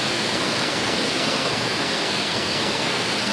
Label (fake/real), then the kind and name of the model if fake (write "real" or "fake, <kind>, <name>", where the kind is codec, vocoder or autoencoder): fake, codec, SNAC